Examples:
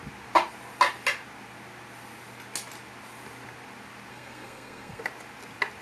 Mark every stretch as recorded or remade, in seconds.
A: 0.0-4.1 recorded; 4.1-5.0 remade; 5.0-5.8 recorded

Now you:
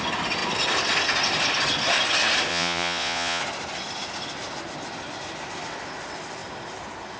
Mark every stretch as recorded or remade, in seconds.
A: 0.0-2.5 recorded; 2.5-3.4 remade; 3.4-7.2 recorded

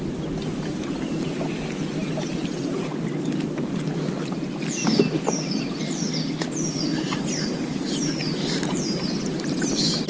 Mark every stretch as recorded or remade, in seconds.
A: 0.0-10.1 recorded

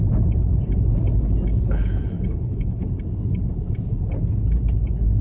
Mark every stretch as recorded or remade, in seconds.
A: 0.0-1.5 recorded; 1.5-2.8 remade; 2.8-5.2 recorded